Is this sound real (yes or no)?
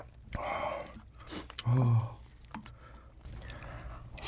yes